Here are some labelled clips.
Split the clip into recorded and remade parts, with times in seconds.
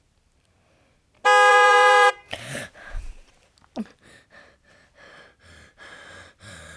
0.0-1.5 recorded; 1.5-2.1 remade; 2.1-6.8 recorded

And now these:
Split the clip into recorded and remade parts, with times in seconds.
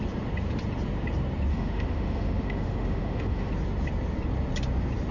0.0-1.5 recorded; 1.5-3.5 remade; 3.5-5.1 recorded